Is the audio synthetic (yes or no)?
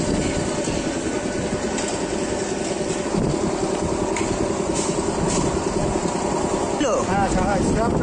no